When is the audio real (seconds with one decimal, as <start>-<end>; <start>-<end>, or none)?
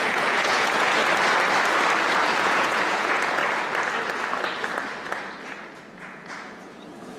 1.0-2.4; 3.4-5.9